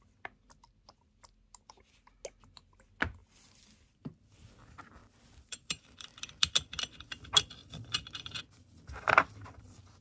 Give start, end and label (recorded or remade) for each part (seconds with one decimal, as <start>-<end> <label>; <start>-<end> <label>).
0.0-3.2 recorded; 3.2-4.2 remade; 4.2-5.0 recorded; 5.0-6.2 remade; 6.2-7.6 recorded; 7.6-8.4 remade; 8.4-10.0 recorded